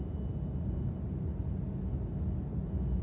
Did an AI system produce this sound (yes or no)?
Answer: no